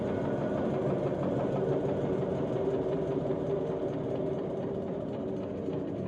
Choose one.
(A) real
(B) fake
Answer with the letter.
A